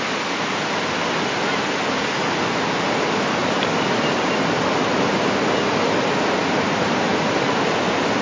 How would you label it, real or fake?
real